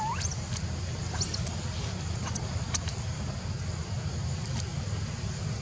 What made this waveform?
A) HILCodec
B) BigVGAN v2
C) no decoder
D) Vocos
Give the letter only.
B